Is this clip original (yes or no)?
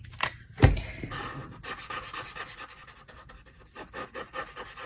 yes